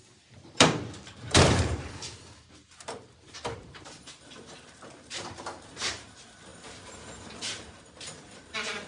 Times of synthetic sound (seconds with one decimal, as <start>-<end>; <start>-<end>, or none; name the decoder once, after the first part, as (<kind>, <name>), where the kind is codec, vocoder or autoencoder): 0.0-8.9 (vocoder, BigVGAN v2)